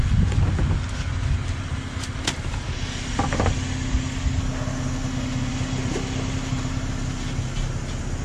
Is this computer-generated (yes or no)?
no